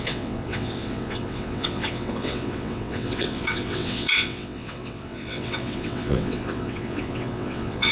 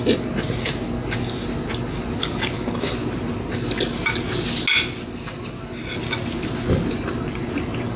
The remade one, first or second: first